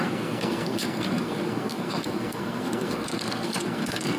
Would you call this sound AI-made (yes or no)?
yes